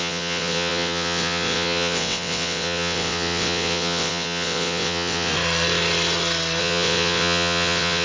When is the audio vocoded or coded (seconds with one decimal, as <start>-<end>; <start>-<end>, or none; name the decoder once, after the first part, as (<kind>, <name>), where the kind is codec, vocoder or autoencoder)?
0.0-5.3 (vocoder, WaveNeXt); 6.6-8.0